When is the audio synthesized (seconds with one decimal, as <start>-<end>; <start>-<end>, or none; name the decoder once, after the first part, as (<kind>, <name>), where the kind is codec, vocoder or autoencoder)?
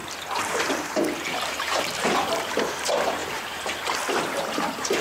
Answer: 1.5-3.2 (vocoder, BigVGAN v2); 4.3-5.0